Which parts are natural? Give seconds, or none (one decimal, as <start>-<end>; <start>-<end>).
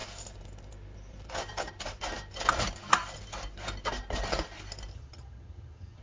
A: 0.0-4.9